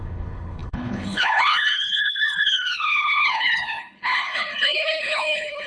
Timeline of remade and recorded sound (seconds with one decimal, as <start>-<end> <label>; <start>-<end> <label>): 0.0-5.7 remade